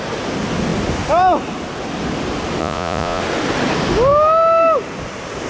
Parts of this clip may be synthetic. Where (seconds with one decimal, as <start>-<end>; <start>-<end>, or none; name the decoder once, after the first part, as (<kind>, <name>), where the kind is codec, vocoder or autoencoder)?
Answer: 2.6-3.2 (vocoder, Vocos)